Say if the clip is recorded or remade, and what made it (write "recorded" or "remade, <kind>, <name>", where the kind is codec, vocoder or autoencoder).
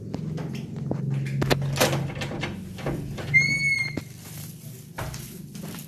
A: recorded